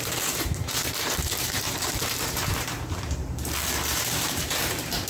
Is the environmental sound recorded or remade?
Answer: remade